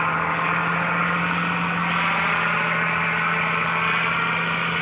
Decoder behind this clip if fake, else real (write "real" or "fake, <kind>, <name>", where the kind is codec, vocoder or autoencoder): real